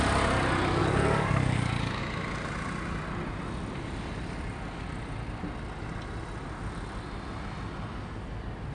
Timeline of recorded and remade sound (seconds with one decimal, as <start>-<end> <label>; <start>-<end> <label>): 0.0-0.8 recorded; 0.8-2.0 remade; 2.0-8.7 recorded